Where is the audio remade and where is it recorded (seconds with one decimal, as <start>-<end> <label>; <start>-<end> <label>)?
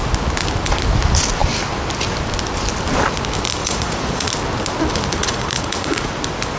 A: 0.0-3.6 recorded; 3.6-4.3 remade; 4.3-5.2 recorded; 5.2-6.1 remade; 6.1-6.6 recorded